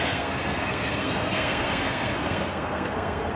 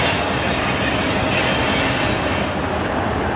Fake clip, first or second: first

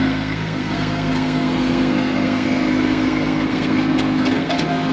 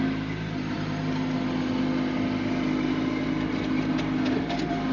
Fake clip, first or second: first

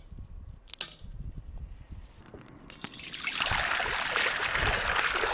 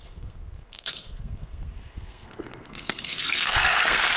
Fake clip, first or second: second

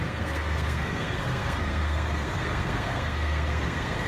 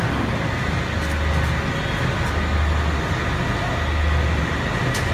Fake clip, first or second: first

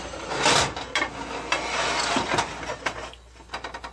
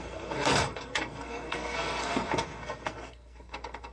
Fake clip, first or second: second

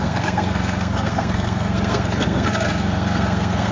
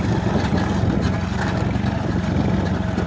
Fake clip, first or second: first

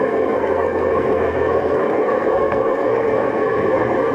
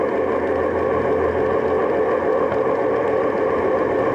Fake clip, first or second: first